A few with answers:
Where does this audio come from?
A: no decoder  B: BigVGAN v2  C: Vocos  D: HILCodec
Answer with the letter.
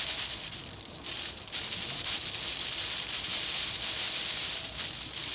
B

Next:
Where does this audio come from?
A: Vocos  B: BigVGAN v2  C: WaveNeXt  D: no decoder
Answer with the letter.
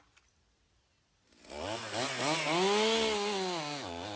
D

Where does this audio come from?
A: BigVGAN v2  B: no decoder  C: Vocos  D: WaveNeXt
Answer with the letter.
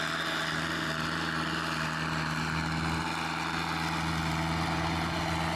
B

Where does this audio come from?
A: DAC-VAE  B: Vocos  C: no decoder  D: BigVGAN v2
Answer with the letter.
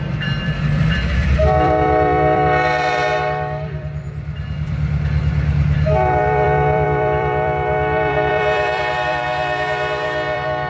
D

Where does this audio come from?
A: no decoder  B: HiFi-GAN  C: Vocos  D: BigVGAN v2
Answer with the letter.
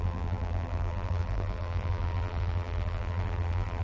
D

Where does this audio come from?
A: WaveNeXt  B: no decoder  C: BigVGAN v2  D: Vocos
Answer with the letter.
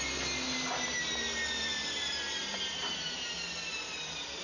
C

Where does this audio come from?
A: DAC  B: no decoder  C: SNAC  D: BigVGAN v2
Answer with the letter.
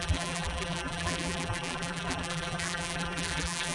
D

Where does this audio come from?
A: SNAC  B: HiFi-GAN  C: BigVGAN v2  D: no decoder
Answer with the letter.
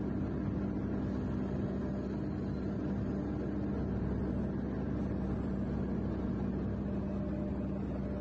D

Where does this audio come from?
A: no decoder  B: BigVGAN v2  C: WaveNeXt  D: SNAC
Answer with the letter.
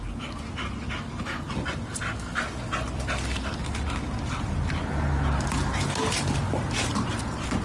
A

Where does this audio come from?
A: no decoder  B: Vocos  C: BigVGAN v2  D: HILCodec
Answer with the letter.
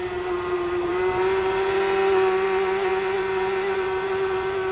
C